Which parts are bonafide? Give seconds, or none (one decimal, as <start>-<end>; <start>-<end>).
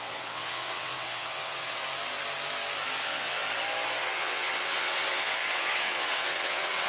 1.8-3.0; 3.4-4.0